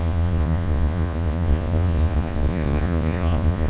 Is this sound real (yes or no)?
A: no